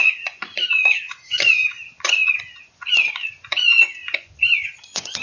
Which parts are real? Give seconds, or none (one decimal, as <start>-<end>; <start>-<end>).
none